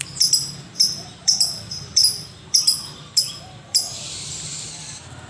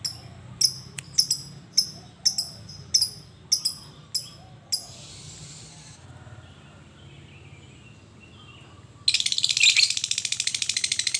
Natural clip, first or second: second